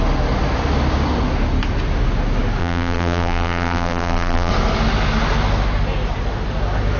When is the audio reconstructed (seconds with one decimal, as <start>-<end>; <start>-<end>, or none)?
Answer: 2.6-4.5